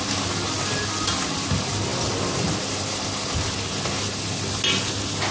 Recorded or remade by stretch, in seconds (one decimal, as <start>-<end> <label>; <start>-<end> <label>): 0.0-5.3 recorded